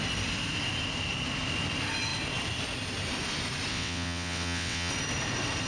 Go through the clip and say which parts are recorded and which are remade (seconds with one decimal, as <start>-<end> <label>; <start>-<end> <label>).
0.0-3.7 recorded; 3.7-4.9 remade; 4.9-5.7 recorded